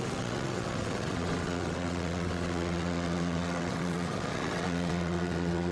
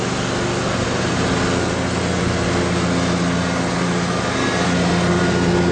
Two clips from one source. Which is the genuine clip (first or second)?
second